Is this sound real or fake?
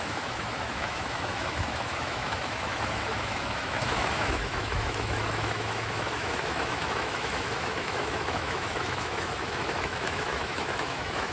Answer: fake